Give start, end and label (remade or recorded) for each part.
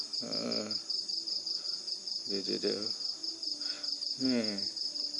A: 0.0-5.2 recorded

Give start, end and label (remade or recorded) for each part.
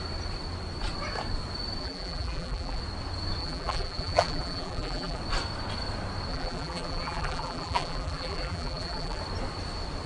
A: 0.0-1.8 recorded; 1.8-2.8 remade; 2.8-3.4 recorded; 3.4-5.2 remade; 5.2-6.3 recorded; 6.3-9.2 remade; 9.2-10.1 recorded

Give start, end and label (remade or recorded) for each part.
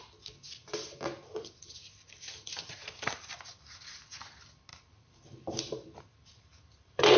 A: 0.0-0.6 recorded; 0.6-3.8 remade; 3.8-4.7 recorded; 4.7-7.2 remade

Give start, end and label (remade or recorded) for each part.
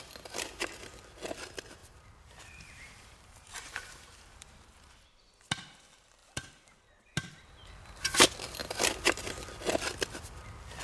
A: 0.0-1.8 recorded; 1.8-4.9 remade; 4.9-10.8 recorded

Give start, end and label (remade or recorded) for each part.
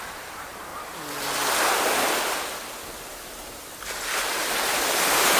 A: 0.0-0.7 remade; 0.7-2.4 recorded; 2.4-5.4 remade